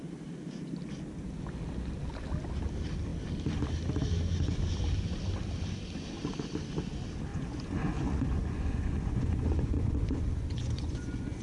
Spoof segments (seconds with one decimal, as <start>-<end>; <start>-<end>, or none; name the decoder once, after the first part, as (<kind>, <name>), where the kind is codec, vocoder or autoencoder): 7.3-11.4 (vocoder, Vocos)